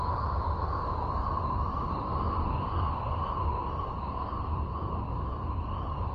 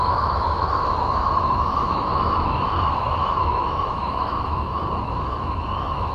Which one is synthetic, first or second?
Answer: second